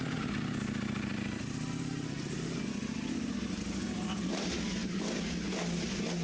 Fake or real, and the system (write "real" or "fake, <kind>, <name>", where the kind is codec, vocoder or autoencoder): real